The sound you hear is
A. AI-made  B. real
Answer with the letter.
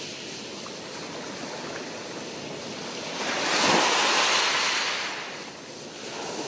B